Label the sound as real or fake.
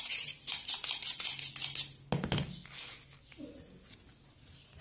real